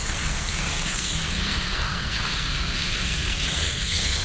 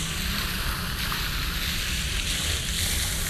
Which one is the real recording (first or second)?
second